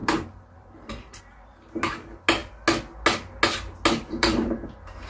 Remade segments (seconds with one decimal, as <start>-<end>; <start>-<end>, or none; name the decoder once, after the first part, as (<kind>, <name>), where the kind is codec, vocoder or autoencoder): 0.0-1.2 (vocoder, BigVGAN v2); 4.0-4.6

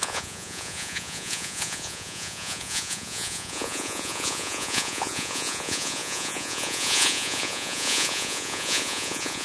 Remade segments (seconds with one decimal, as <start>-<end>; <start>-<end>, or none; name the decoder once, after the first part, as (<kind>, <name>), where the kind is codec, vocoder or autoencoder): 0.0-9.4 (vocoder, Vocos)

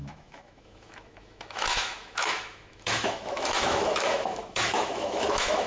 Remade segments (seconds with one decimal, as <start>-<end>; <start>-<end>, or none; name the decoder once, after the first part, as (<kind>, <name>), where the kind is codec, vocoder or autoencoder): 0.0-5.7 (autoencoder, DAC-VAE)

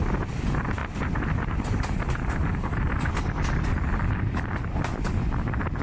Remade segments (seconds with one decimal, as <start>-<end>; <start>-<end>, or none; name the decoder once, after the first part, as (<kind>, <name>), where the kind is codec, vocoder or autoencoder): 0.8-3.1 (vocoder, BigVGAN v2)

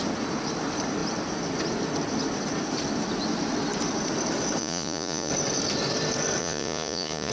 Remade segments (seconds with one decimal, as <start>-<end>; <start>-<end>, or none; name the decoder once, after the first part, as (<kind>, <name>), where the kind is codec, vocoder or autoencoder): 4.6-5.3 (vocoder, Vocos); 6.4-7.3

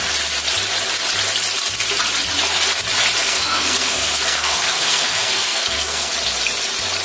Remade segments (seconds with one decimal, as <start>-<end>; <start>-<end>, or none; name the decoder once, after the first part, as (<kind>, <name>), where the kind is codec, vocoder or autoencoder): 3.2-6.1 (codec, SNAC)

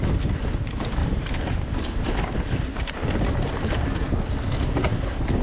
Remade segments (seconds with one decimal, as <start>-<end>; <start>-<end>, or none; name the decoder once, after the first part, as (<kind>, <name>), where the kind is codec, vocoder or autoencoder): 1.0-4.2 (vocoder, BigVGAN v2)

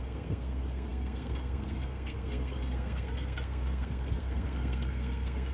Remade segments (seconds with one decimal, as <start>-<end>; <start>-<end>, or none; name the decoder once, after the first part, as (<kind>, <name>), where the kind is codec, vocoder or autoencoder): 0.0-5.5 (codec, SNAC)